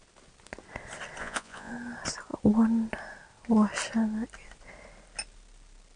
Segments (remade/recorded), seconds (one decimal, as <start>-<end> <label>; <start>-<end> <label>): 0.0-1.2 recorded; 1.2-1.7 remade; 1.7-6.0 recorded

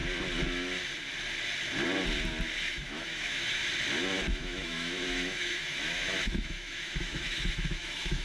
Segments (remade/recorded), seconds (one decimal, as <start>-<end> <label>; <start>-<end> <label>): 0.0-2.7 recorded; 2.7-3.6 remade; 3.6-4.3 recorded; 4.3-8.2 remade

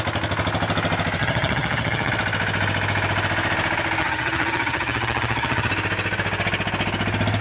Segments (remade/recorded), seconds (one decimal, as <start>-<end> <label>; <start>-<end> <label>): 0.0-1.2 recorded; 1.2-2.1 remade; 2.1-4.0 recorded; 4.0-5.7 remade; 5.7-7.4 recorded

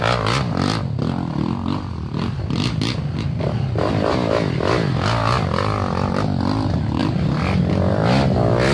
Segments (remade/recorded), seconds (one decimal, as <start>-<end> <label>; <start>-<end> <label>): 0.0-7.0 recorded; 7.0-7.6 remade; 7.6-8.7 recorded

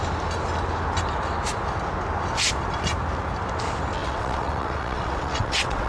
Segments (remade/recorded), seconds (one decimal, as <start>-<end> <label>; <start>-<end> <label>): 0.0-4.0 recorded; 4.0-5.9 remade

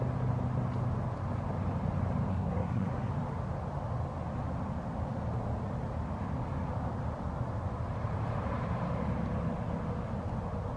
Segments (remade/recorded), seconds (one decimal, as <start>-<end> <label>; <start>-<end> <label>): 0.0-2.3 recorded; 2.3-3.1 remade; 3.1-10.8 recorded